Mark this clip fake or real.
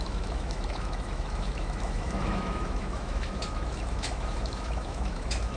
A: fake